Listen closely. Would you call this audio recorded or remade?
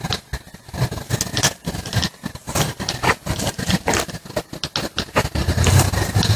recorded